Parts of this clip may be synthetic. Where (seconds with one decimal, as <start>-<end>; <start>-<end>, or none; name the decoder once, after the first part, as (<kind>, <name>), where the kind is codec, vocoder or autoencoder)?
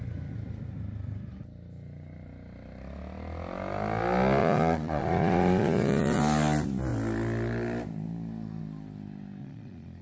4.4-6.2 (vocoder, Vocos); 9.4-10.0